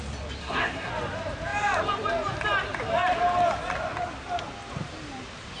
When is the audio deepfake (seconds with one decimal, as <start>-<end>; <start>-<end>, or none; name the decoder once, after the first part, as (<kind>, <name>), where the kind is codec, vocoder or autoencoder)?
0.4-0.9 (codec, SNAC)